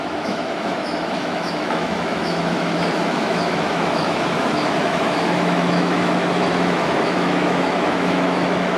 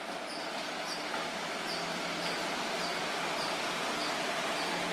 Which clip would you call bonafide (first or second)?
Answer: second